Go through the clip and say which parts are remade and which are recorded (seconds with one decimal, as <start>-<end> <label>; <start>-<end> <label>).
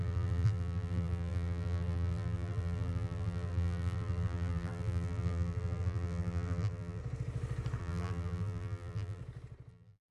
0.0-7.0 remade; 7.0-7.8 recorded; 7.8-9.2 remade; 9.2-9.7 recorded; 9.7-10.1 remade